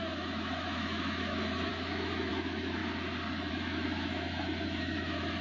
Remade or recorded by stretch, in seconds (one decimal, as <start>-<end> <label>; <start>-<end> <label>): 0.0-2.8 remade; 2.8-3.5 recorded; 3.5-5.4 remade